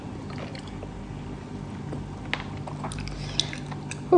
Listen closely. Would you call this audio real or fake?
real